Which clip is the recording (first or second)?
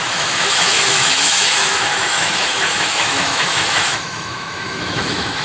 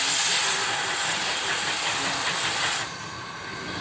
second